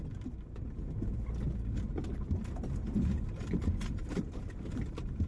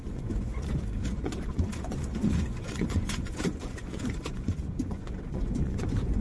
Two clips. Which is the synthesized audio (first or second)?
second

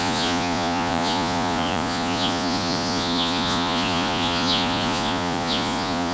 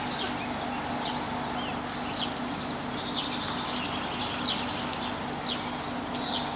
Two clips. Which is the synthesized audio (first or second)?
first